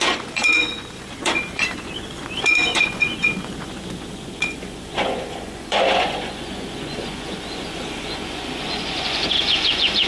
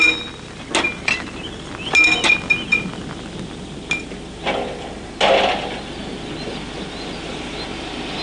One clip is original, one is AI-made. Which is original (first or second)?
second